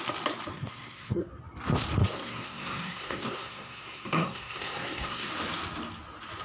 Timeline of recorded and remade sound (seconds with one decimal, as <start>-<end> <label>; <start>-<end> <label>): 0.0-0.5 recorded; 0.5-1.3 remade; 1.3-2.0 recorded; 2.0-5.3 remade; 5.3-6.4 recorded